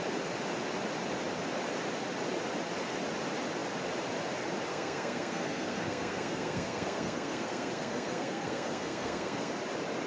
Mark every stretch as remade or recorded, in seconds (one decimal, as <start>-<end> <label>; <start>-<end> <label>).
0.0-4.7 recorded; 4.7-9.5 remade; 9.5-10.1 recorded